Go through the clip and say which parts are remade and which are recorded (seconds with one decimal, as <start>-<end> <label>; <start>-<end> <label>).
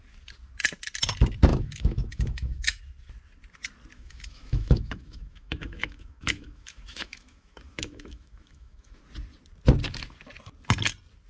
0.0-1.5 recorded; 1.5-2.8 remade; 2.8-3.9 recorded; 3.9-9.0 remade; 9.0-11.3 recorded